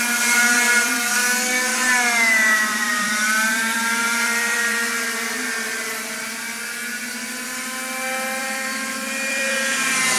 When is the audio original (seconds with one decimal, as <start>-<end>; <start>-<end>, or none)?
0.0-2.7; 6.4-8.4